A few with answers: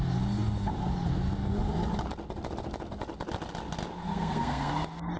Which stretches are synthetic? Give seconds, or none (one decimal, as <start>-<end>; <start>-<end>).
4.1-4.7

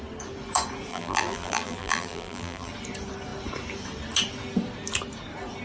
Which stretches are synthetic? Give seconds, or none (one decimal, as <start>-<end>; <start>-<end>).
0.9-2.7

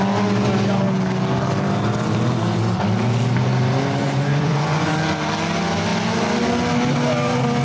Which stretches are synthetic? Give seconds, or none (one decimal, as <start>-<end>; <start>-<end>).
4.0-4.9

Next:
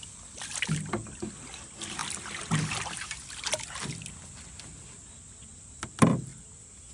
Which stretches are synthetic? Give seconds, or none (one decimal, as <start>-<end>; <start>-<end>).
none

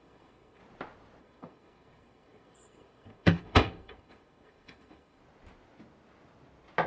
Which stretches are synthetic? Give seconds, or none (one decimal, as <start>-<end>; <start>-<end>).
0.0-0.6; 1.2-5.2